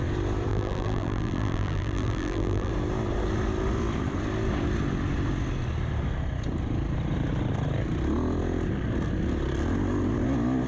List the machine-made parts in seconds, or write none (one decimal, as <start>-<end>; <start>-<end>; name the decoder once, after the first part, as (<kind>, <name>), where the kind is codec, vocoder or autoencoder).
0.5-2.7 (vocoder, BigVGAN v2)